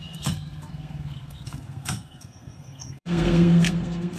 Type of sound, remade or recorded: remade